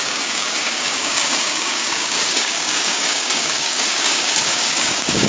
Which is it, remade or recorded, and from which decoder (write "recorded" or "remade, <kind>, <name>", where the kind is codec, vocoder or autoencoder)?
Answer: remade, codec, DAC